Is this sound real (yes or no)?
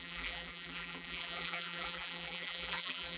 no